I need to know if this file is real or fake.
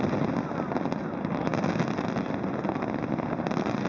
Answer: real